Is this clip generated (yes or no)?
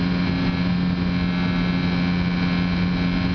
no